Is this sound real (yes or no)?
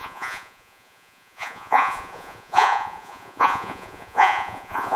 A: no